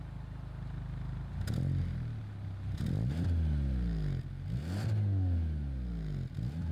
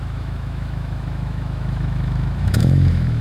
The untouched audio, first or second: first